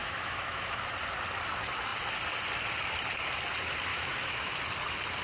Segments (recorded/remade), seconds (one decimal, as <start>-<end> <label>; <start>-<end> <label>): 0.0-0.9 remade; 0.9-3.9 recorded; 3.9-4.5 remade; 4.5-5.2 recorded